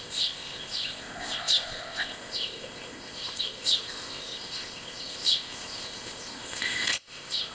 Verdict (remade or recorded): remade